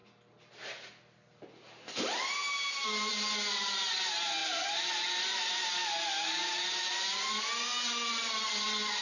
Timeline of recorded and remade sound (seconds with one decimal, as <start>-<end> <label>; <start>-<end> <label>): 0.0-9.0 recorded